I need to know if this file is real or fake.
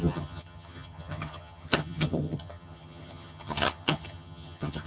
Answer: fake